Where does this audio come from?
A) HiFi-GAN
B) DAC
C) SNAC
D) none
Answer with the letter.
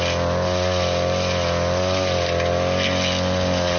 D